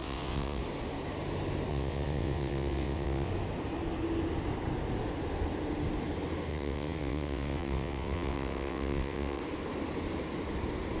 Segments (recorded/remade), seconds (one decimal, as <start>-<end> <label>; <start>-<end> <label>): 0.0-0.6 remade; 0.6-1.7 recorded; 1.7-3.3 remade; 3.3-6.5 recorded; 6.5-9.4 remade; 9.4-11.0 recorded